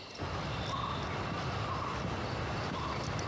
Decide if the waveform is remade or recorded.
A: recorded